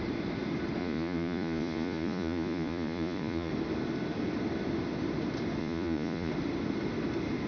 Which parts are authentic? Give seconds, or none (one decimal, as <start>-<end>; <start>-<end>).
0.0-0.8; 3.5-5.6; 6.3-7.5